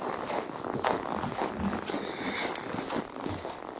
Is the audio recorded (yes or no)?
yes